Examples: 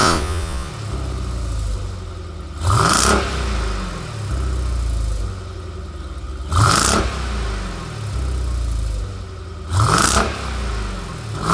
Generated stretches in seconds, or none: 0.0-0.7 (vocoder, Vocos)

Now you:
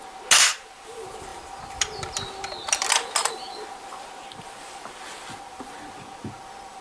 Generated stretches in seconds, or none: none

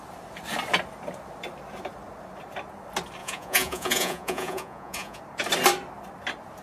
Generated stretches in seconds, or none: 3.2-5.2 (vocoder, Vocos)